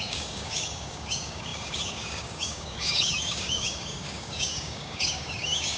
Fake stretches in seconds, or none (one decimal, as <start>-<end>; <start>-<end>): 0.0-5.8